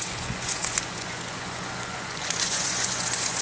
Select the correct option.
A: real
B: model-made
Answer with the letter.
B